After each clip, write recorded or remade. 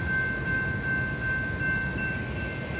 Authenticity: recorded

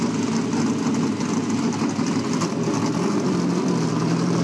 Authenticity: recorded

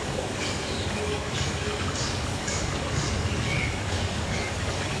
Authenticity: remade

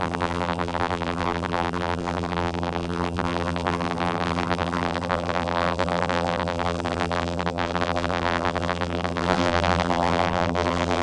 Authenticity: remade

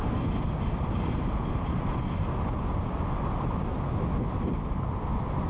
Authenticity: recorded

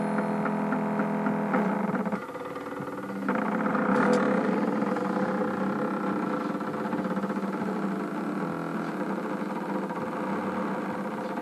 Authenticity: recorded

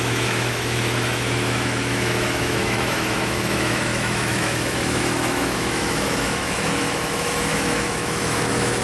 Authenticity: remade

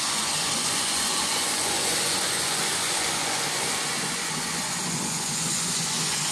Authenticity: remade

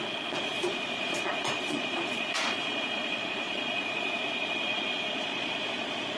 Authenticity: remade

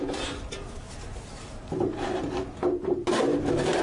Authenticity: remade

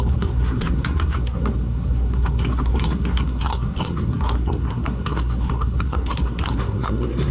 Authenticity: remade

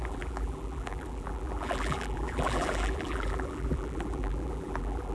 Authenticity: remade